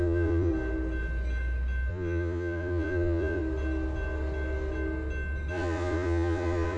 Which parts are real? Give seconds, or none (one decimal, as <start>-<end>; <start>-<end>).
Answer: 0.5-1.9; 3.4-5.5

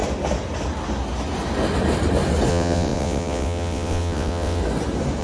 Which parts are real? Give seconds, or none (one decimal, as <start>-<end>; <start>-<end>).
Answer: 0.0-2.5; 4.6-5.2

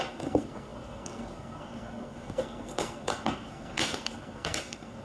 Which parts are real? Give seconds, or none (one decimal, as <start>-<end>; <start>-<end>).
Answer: none

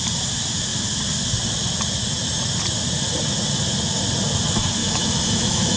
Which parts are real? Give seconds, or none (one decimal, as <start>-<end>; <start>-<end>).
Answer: 0.0-4.8

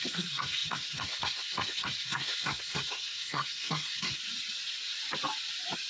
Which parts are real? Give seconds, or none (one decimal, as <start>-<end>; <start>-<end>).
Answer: 4.2-5.9

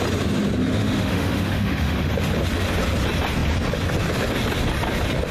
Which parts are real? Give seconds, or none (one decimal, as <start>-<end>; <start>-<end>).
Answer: 0.0-0.6; 2.1-5.3

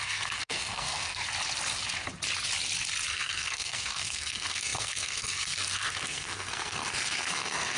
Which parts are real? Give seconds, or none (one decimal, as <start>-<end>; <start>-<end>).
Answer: 1.2-3.1

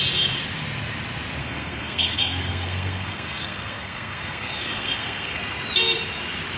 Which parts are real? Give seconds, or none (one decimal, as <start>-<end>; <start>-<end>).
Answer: 0.0-1.4; 5.4-6.6